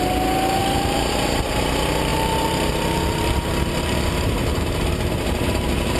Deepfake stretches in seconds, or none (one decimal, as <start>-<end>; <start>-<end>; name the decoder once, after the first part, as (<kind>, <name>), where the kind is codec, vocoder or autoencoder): 2.1-6.0 (vocoder, BigVGAN v2)